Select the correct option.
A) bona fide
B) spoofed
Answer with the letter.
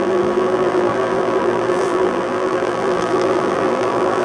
B